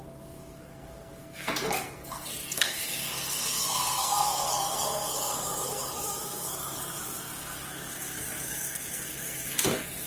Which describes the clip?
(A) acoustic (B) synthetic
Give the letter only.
B